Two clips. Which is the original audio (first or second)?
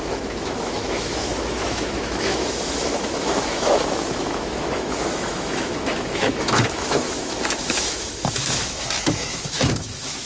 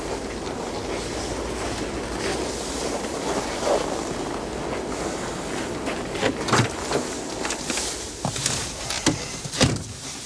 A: second